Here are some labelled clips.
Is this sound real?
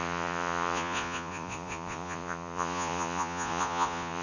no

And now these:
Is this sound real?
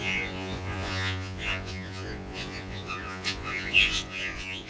no